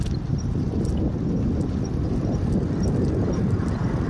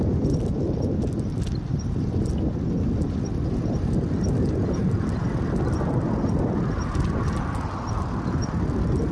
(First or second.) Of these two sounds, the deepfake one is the first